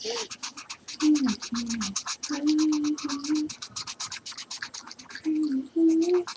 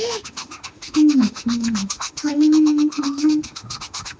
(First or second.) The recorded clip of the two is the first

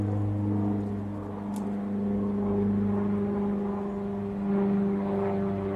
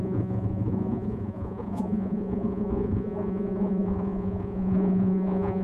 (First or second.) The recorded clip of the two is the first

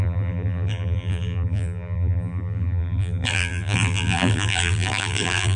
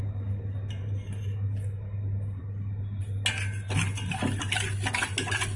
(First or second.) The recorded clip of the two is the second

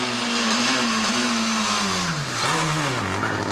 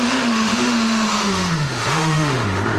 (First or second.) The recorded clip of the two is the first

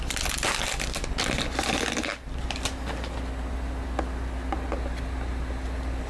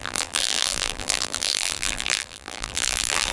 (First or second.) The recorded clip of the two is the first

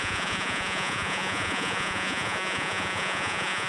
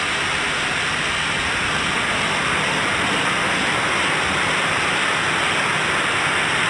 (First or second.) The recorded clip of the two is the second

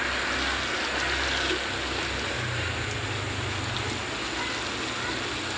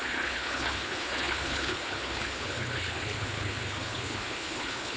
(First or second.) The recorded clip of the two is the first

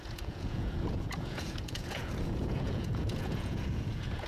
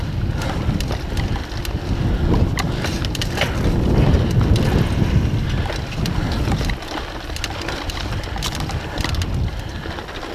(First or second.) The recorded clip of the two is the second